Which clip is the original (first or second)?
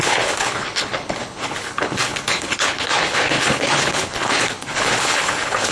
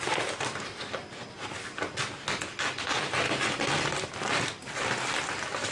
second